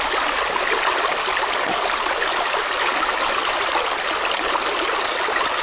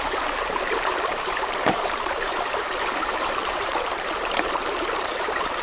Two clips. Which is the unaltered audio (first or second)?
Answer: first